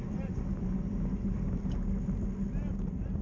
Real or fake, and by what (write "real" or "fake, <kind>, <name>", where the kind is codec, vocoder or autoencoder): real